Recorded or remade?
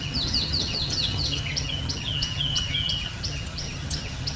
remade